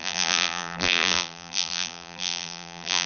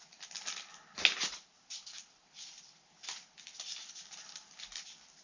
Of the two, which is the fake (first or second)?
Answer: first